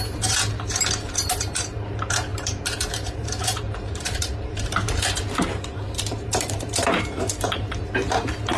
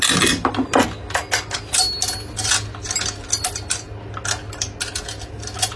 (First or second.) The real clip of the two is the second